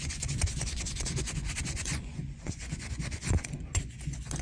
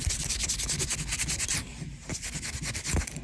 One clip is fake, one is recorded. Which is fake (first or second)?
first